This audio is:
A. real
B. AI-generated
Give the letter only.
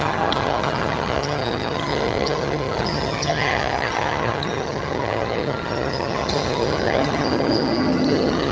B